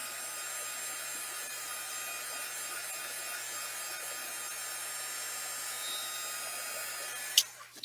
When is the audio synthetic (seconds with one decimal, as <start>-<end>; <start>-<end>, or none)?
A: none